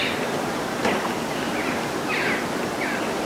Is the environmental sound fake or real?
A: real